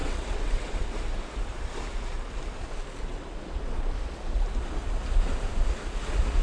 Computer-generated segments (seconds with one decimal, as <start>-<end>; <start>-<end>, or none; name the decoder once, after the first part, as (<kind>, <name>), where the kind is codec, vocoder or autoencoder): 0.0-0.8 (vocoder, WaveNeXt)